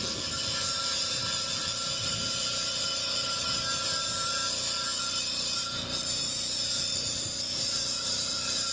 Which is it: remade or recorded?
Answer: remade